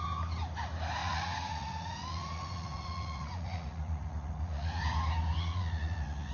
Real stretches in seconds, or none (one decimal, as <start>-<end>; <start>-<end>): 0.0-1.0; 4.8-5.4